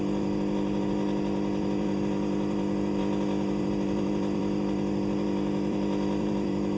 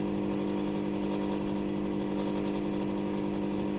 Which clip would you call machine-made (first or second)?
first